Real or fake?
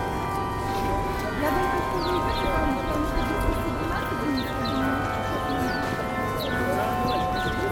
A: real